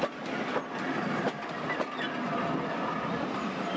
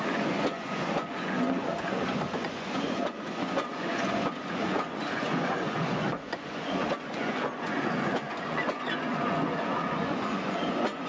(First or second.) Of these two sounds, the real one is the first